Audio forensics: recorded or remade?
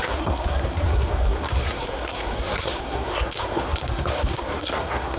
remade